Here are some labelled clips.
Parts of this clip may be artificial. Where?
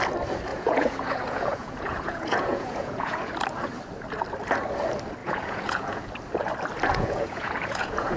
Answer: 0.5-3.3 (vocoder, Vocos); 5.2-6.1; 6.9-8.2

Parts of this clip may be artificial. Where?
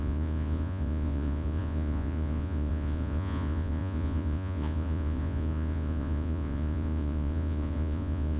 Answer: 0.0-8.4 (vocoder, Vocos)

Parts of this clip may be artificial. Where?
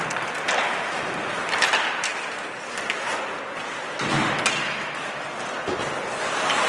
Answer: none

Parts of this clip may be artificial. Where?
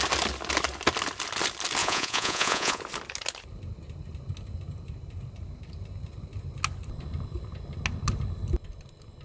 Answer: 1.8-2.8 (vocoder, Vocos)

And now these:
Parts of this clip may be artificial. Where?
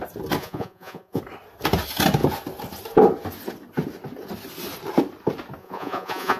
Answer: 0.4-1.2 (vocoder, Vocos); 5.6-6.4